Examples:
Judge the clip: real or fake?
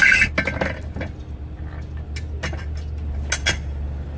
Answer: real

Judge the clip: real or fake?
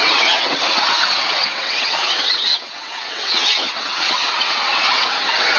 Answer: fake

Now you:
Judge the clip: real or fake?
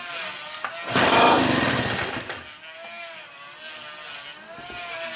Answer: real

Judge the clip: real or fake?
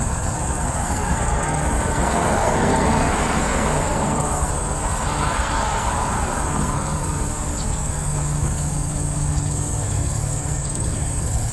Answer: fake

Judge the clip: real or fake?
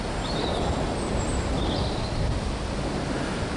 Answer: real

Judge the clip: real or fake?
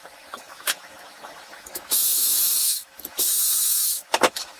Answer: fake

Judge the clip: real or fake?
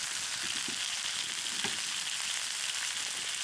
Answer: real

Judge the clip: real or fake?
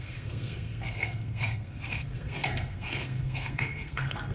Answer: fake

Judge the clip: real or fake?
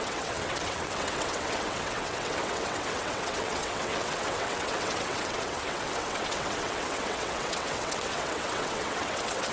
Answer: fake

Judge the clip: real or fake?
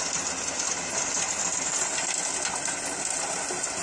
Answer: real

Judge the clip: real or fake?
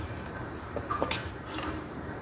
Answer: fake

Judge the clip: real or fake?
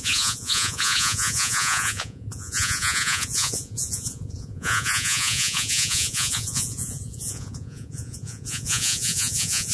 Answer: fake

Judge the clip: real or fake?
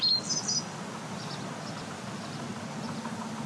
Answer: real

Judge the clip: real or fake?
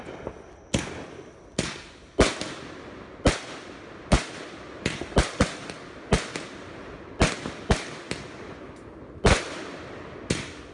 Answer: real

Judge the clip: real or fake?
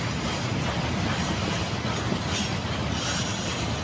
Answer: real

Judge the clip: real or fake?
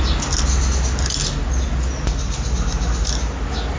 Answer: real